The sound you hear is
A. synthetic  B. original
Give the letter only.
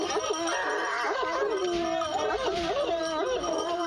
B